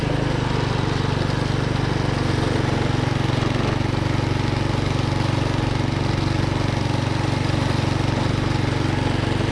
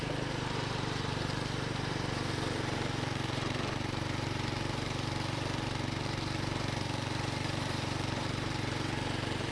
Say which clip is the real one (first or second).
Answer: first